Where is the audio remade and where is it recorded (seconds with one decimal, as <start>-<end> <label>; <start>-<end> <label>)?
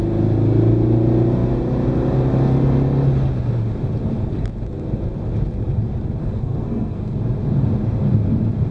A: 0.0-6.2 recorded; 6.2-7.2 remade; 7.2-8.7 recorded